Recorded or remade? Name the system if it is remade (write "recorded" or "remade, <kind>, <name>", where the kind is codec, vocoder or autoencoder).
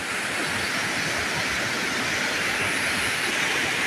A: recorded